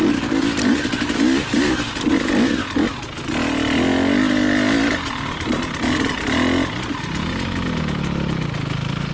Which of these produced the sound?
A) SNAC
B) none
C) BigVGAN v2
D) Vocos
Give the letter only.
B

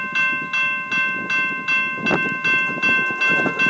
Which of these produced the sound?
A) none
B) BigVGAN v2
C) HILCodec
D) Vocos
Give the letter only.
A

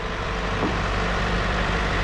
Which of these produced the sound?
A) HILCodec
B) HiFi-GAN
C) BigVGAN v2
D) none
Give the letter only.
C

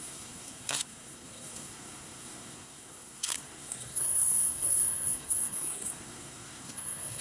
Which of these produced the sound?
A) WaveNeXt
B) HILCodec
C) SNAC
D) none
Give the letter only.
C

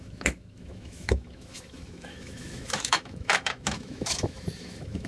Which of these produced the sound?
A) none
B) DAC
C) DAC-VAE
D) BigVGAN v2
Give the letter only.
C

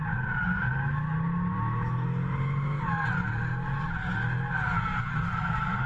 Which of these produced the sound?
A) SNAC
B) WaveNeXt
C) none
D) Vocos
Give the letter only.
C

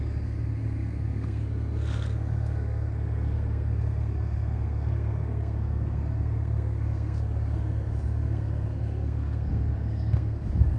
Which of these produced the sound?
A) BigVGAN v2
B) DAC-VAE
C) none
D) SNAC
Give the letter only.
D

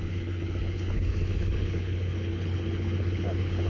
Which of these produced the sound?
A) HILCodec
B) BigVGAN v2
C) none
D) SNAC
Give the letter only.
A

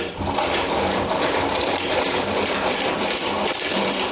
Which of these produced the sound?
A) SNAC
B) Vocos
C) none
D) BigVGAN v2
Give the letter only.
D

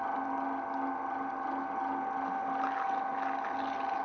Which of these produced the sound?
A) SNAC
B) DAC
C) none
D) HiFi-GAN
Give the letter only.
C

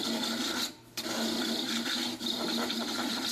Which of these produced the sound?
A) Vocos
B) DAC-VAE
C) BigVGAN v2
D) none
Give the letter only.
D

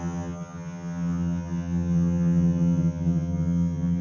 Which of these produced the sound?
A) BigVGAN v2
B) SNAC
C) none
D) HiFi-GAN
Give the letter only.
D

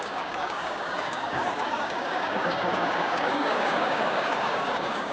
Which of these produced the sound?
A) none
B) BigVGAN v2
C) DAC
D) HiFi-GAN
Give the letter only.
C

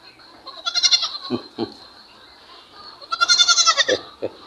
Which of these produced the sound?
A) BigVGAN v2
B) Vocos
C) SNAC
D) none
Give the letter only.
D